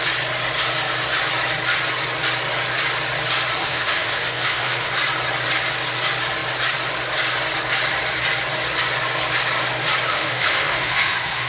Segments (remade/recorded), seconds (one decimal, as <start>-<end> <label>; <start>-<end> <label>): 0.0-3.6 recorded; 3.6-4.9 remade; 4.9-10.1 recorded; 10.1-11.5 remade